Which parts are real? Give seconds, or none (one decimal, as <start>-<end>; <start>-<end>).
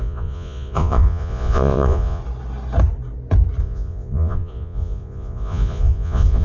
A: 2.2-3.6